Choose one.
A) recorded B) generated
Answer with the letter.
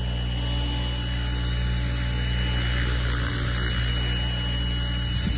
A